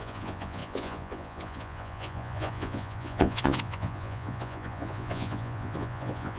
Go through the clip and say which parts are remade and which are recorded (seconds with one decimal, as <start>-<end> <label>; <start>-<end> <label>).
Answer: 0.0-6.4 remade